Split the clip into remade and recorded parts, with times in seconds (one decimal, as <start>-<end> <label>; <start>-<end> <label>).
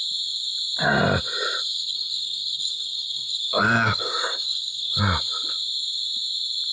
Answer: 0.0-1.8 recorded; 1.8-5.0 remade; 5.0-6.7 recorded